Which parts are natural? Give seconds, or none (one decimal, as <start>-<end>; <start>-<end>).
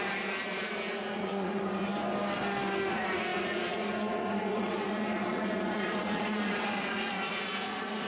1.9-2.9